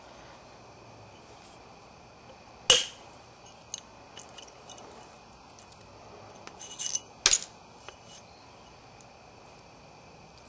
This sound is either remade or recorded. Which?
recorded